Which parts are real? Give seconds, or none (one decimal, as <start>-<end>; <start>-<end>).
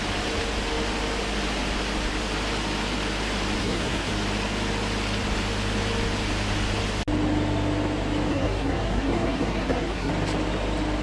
0.0-3.6; 4.1-8.3; 10.1-11.0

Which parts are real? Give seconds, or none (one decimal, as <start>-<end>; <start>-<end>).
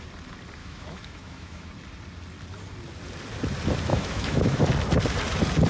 0.0-0.6; 1.7-3.9; 4.6-5.7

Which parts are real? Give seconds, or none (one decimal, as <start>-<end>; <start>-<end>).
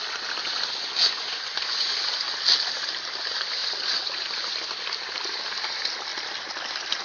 0.0-0.7; 2.0-7.0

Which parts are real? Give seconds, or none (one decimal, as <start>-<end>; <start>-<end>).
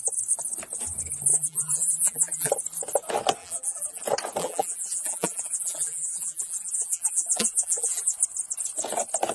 0.0-1.3; 2.5-3.4; 4.0-4.4; 8.1-9.3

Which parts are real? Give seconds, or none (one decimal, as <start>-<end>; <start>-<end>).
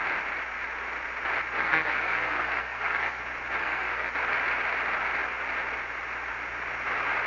0.0-1.6; 3.2-3.6; 4.1-7.3